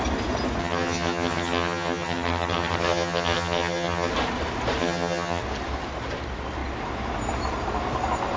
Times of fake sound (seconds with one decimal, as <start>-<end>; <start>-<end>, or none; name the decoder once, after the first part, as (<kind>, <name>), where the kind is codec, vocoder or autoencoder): 0.6-4.1 (vocoder, HiFi-GAN); 4.8-5.4